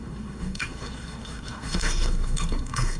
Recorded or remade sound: remade